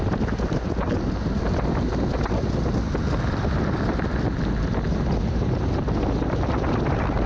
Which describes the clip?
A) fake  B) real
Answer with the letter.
B